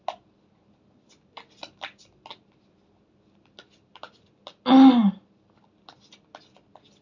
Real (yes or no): yes